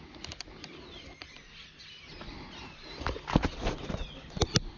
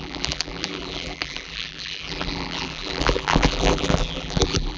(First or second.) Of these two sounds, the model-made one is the second